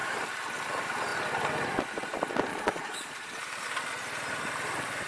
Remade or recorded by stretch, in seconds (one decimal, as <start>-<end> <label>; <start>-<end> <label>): 0.0-2.5 recorded; 2.5-3.4 remade; 3.4-5.1 recorded